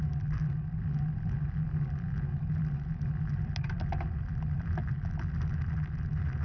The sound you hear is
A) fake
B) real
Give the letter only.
B